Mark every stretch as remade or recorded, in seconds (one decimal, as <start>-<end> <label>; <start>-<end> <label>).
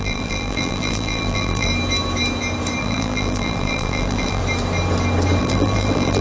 0.0-1.7 remade; 1.7-2.8 recorded; 2.8-4.4 remade; 4.4-5.4 recorded; 5.4-6.2 remade